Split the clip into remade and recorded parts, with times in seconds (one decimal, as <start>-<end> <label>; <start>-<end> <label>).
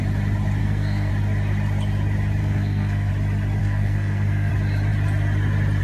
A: 0.0-0.6 recorded; 0.6-1.1 remade; 1.1-2.4 recorded; 2.4-3.1 remade; 3.1-3.6 recorded; 3.6-4.5 remade; 4.5-5.8 recorded